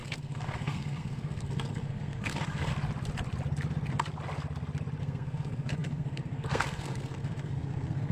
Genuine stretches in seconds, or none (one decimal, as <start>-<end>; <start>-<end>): 2.7-5.0